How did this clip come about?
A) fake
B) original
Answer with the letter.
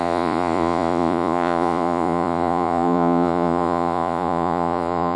A